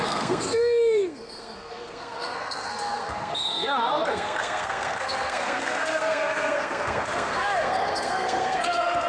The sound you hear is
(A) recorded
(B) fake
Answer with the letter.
B